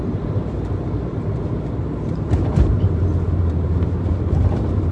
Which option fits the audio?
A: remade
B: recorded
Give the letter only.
A